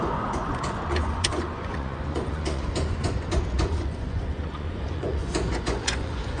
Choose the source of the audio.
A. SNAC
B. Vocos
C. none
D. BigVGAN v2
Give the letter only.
B